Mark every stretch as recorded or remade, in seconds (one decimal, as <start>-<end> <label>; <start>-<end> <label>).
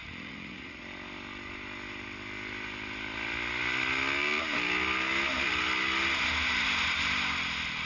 0.0-0.8 remade; 0.8-7.9 recorded